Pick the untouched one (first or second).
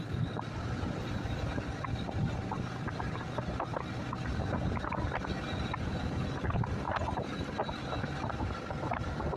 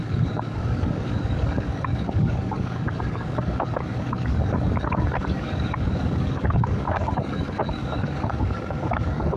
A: first